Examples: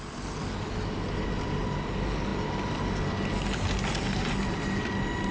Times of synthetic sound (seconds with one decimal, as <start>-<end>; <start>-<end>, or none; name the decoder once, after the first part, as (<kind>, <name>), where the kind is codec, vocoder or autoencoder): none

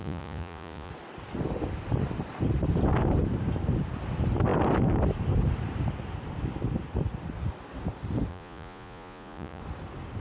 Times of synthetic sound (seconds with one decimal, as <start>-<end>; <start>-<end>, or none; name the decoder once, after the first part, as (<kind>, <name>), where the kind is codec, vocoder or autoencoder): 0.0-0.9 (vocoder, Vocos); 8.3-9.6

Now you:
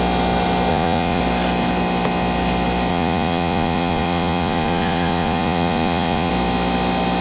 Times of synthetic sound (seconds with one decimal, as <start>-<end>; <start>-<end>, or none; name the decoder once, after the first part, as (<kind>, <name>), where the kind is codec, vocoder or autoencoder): 0.7-1.2 (vocoder, Vocos); 2.9-6.3